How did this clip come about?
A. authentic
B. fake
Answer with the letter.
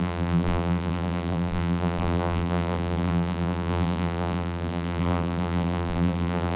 B